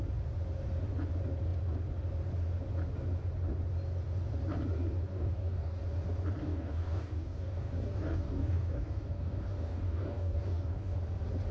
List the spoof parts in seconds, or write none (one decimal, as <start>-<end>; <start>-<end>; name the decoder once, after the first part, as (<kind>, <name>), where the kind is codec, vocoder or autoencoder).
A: 5.1-5.8 (codec, DAC); 6.4-11.0